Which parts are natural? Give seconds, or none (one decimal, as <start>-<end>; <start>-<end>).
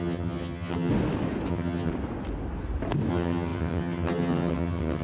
0.9-1.5; 1.9-3.1